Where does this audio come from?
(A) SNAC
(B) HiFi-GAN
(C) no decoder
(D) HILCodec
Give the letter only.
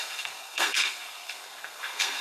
A